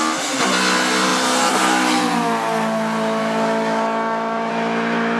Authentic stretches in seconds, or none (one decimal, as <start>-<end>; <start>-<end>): 0.0-3.2; 4.5-5.2